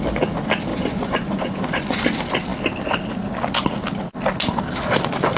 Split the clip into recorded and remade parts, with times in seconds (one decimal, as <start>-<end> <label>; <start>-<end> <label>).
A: 0.0-0.7 recorded; 0.7-2.0 remade; 2.0-5.4 recorded